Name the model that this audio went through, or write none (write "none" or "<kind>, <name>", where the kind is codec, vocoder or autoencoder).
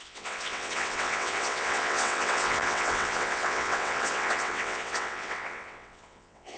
vocoder, WaveNeXt